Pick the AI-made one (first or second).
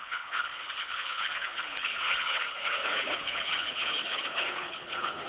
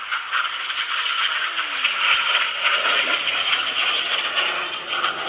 first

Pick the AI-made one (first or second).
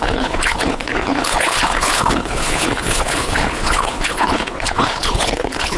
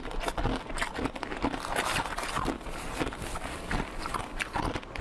first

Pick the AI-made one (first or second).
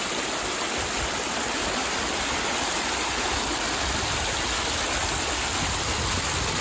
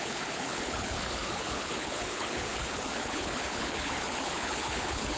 second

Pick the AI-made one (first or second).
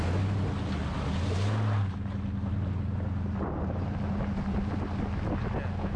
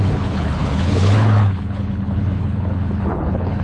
second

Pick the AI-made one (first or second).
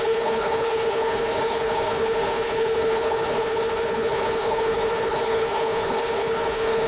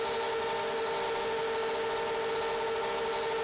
first